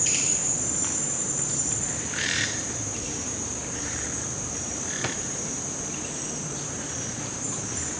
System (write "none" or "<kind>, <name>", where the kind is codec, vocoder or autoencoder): vocoder, BigVGAN v2